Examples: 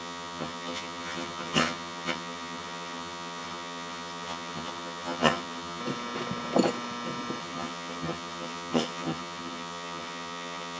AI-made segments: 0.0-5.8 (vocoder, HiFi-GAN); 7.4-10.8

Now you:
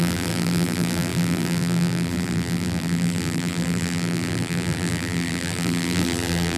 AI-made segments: 0.0-6.6 (vocoder, BigVGAN v2)